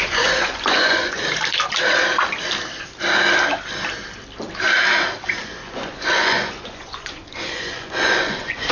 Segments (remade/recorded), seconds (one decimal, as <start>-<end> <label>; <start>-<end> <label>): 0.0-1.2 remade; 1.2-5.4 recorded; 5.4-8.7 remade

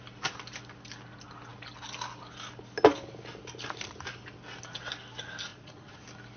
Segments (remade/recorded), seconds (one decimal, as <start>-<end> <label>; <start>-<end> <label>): 0.0-5.5 recorded; 5.5-6.0 remade; 6.0-6.4 recorded

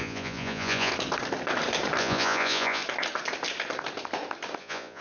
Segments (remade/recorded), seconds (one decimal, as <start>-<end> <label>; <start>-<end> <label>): 0.0-0.9 remade; 0.9-2.0 recorded; 2.0-2.8 remade; 2.8-4.6 recorded; 4.6-5.0 remade

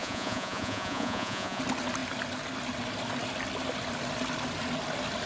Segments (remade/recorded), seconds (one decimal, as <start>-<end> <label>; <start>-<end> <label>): 0.0-1.6 remade; 1.6-5.3 recorded